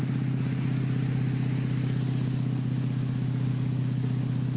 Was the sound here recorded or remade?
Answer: recorded